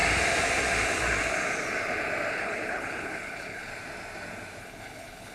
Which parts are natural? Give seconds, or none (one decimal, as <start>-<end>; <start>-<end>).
0.0-2.3; 3.7-4.6